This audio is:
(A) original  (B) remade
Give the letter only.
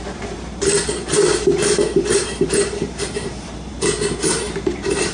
B